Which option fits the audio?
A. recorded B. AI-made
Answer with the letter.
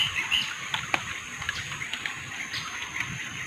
A